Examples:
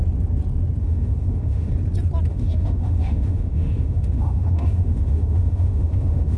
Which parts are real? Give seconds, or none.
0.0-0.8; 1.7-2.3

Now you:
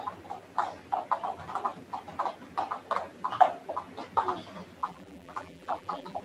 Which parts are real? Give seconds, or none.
0.0-4.8

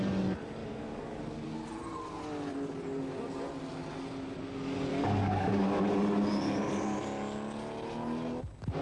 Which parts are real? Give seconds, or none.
0.0-0.6; 1.2-4.9; 5.8-8.8

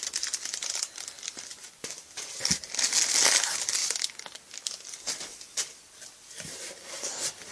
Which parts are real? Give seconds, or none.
0.0-1.5; 2.0-7.5

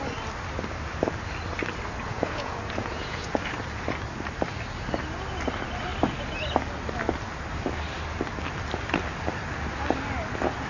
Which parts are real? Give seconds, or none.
0.0-2.1; 3.3-10.7

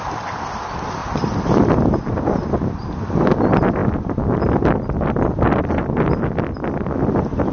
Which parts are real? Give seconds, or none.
0.0-7.5